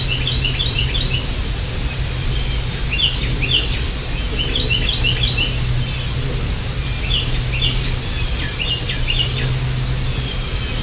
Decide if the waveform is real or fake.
real